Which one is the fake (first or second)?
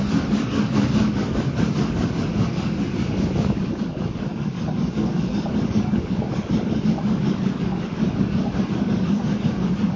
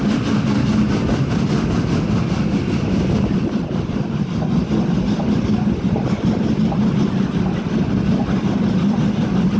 first